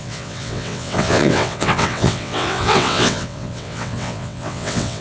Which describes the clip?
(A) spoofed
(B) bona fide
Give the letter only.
A